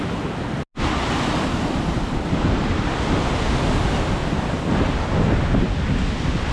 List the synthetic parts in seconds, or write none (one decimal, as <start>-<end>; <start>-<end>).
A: 4.2-5.1